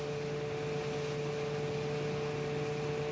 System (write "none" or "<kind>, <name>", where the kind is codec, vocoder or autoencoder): none